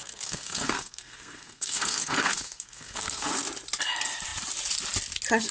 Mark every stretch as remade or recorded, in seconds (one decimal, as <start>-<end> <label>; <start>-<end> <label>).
0.0-3.3 remade; 3.3-5.5 recorded